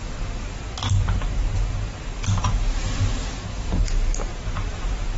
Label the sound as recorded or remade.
remade